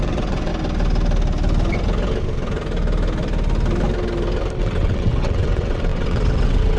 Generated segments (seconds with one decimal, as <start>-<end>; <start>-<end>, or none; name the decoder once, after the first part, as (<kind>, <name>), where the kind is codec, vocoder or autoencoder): 0.0-0.5 (vocoder, WaveNeXt); 4.6-6.8